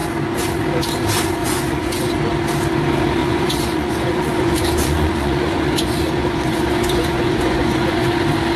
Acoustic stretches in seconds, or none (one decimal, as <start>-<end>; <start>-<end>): 0.0-1.4; 2.1-3.2; 8.1-8.6